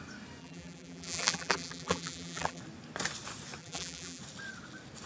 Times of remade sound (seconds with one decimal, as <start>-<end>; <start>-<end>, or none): 0.4-2.6; 3.6-4.2